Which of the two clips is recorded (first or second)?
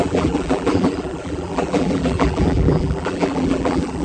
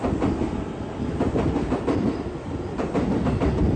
second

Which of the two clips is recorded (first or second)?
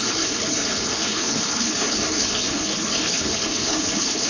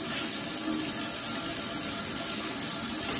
second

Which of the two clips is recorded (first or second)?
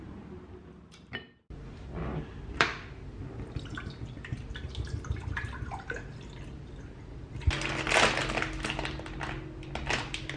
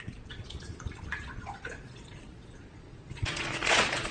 first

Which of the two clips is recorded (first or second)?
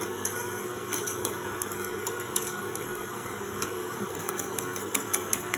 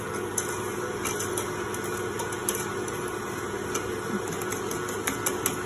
second